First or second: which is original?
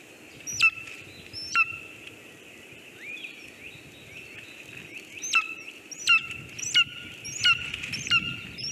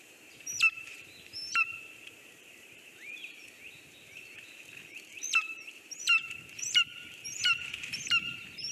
first